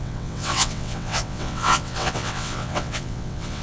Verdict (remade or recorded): remade